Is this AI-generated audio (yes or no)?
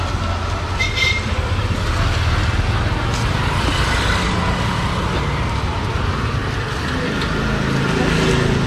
no